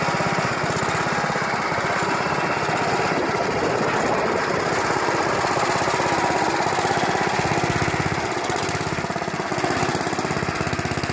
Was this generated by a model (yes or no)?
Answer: no